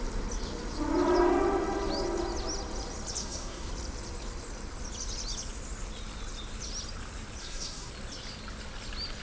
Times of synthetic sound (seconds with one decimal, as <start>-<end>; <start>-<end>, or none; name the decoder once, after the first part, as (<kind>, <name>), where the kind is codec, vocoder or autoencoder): 3.2-3.7 (codec, SNAC); 7.4-7.9